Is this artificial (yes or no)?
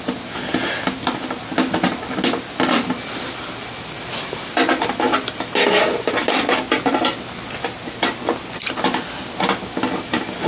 no